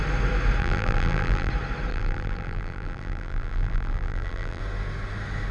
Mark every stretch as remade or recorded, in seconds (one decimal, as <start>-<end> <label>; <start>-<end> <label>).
0.0-0.6 recorded; 0.6-1.5 remade; 1.5-1.9 recorded; 1.9-4.6 remade; 4.6-5.5 recorded